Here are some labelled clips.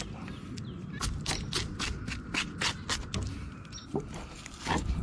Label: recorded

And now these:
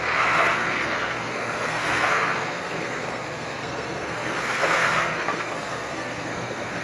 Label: remade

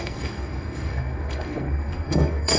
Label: remade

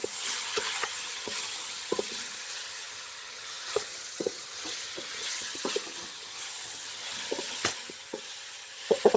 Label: remade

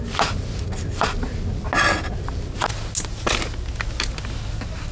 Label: recorded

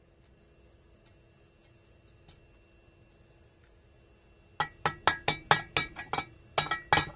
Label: recorded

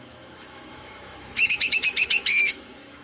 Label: remade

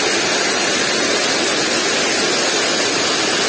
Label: recorded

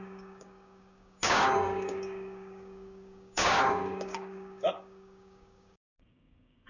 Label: remade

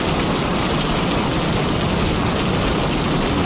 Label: recorded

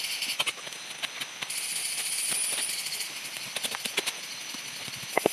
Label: recorded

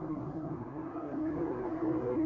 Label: remade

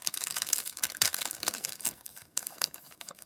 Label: remade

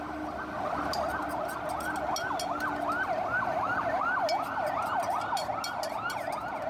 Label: recorded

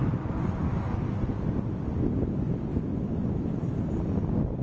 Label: recorded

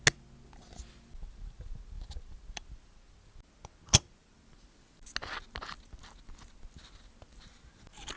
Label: recorded